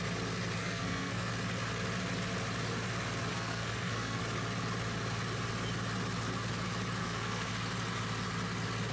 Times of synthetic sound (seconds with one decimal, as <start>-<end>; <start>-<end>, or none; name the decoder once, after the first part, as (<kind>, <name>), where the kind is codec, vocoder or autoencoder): 0.6-1.3 (codec, SNAC); 3.3-4.2; 7.0-7.5